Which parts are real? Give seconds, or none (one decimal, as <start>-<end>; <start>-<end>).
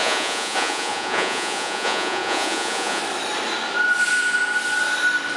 3.0-5.4